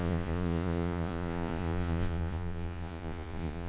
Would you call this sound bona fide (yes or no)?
no